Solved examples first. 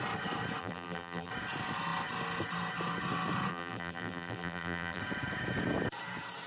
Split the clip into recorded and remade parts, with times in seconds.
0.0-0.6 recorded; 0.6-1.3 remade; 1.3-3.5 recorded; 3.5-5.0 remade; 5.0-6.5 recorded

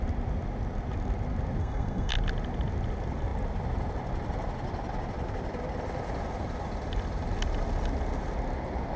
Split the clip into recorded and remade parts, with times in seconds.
0.0-1.6 recorded; 1.6-2.1 remade; 2.1-9.0 recorded